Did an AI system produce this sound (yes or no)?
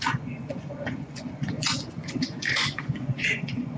yes